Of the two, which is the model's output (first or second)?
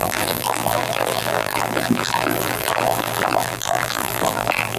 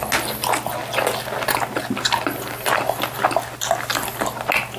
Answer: first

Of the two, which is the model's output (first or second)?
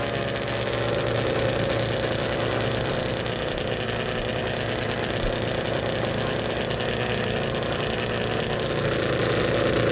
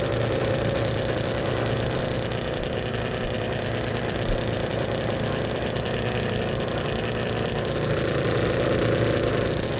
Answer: second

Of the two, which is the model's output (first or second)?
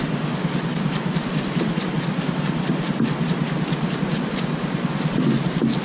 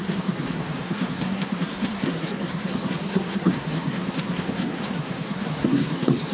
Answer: second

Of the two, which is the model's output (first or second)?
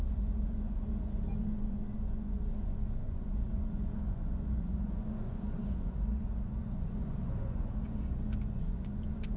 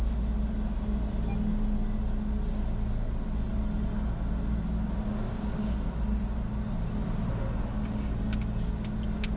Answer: first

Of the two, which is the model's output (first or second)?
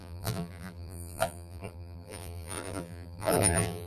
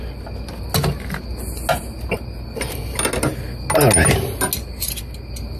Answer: first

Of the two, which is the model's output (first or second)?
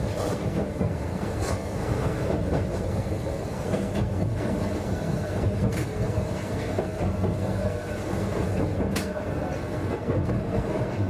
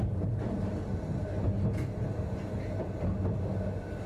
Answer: first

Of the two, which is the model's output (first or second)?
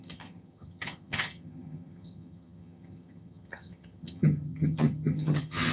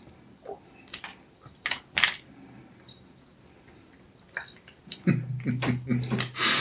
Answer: first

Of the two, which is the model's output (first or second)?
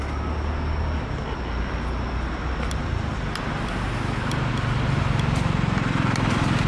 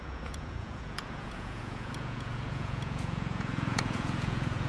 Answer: second